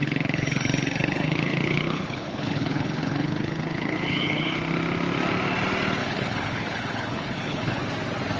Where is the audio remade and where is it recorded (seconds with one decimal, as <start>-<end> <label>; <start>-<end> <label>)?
0.0-4.6 remade; 4.6-6.0 recorded; 6.0-7.8 remade; 7.8-8.4 recorded